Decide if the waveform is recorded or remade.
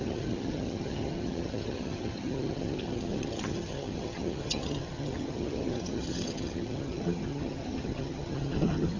remade